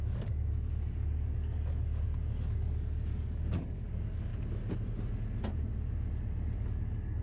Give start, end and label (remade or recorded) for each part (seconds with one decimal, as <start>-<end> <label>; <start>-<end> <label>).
0.0-4.3 remade; 4.3-6.6 recorded; 6.6-7.2 remade